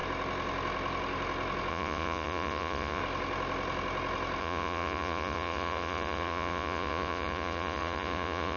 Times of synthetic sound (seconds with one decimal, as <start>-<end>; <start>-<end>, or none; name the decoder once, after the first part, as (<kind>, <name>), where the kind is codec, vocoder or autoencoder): 1.7-3.0 (vocoder, Vocos); 4.4-8.6